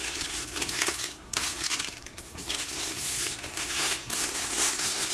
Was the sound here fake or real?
fake